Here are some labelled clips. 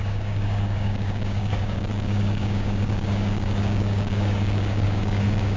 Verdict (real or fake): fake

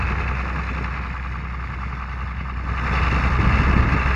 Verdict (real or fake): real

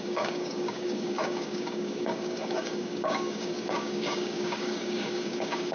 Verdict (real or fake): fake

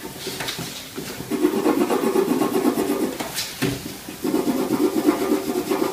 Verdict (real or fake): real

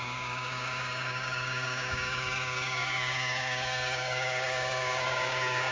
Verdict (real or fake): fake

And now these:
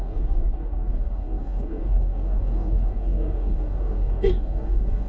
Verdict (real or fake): fake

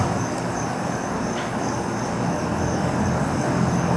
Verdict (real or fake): fake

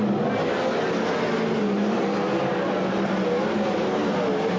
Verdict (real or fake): real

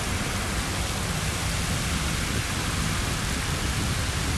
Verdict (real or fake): real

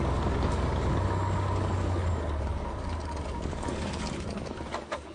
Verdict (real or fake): fake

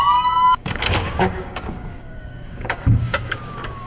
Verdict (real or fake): fake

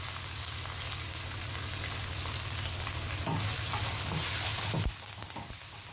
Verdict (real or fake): real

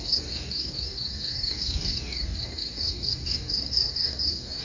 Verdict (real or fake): fake